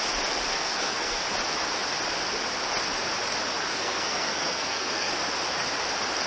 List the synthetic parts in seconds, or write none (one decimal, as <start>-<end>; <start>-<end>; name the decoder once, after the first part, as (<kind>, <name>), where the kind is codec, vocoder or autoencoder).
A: 0.5-1.2 (codec, SNAC); 3.7-5.1